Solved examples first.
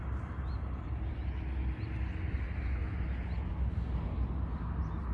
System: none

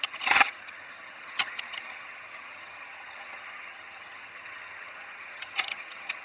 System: vocoder, HiFi-GAN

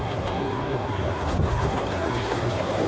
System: codec, SNAC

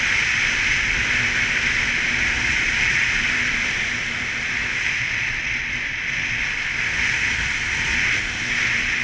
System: none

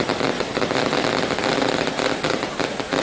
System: none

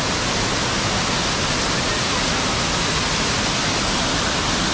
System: none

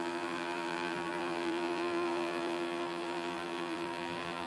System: vocoder, BigVGAN v2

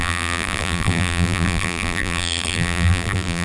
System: vocoder, BigVGAN v2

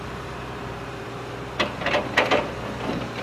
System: vocoder, BigVGAN v2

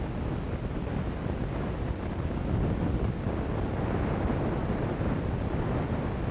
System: none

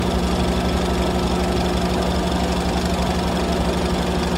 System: none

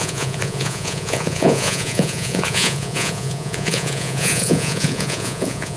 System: vocoder, Vocos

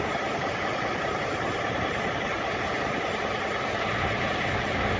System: none